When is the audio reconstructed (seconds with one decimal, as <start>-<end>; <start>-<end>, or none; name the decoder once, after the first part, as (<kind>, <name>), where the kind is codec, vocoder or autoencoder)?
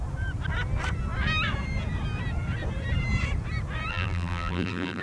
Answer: 3.9-5.0 (vocoder, BigVGAN v2)